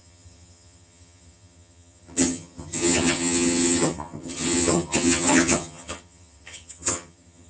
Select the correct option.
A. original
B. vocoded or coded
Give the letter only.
B